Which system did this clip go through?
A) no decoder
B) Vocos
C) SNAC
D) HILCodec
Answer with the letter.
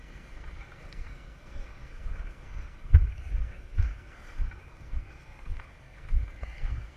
C